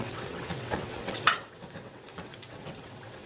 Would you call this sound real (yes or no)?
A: no